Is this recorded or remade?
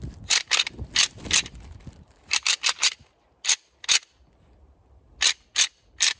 recorded